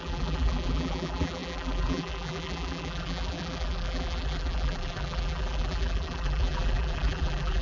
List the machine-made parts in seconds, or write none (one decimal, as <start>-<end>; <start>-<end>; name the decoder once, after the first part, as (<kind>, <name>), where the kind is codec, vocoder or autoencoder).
0.0-7.6 (vocoder, BigVGAN v2)